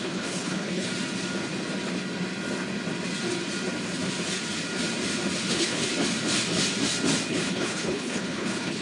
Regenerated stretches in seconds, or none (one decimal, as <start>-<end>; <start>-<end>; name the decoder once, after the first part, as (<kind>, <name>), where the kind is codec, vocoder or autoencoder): 0.0-0.9 (codec, HILCodec); 5.5-5.9; 7.3-8.8